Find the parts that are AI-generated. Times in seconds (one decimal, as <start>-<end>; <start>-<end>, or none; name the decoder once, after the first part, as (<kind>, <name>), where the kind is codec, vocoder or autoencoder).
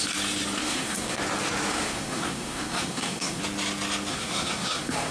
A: 0.6-1.2 (codec, SNAC); 1.7-3.4; 4.1-5.1